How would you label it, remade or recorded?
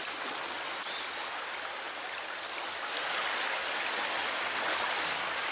recorded